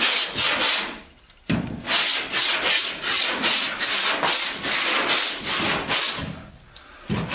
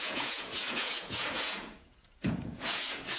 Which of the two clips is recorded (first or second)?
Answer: first